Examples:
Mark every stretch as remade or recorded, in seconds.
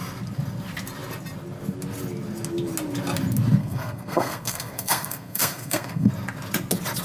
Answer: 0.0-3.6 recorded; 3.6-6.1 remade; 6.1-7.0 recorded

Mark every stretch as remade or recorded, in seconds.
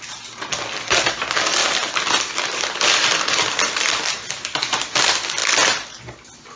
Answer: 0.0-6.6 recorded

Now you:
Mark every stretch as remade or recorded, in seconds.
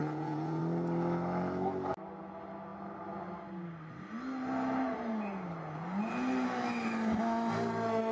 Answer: 0.0-0.6 remade; 0.6-8.1 recorded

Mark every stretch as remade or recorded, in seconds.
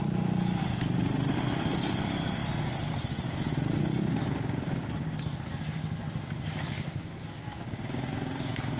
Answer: 0.0-7.0 recorded; 7.0-8.8 remade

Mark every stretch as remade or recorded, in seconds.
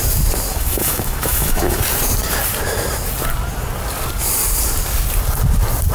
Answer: 0.0-0.5 recorded; 0.5-1.8 remade; 1.8-5.9 recorded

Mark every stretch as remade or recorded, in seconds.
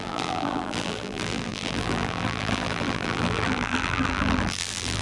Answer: 0.0-5.0 remade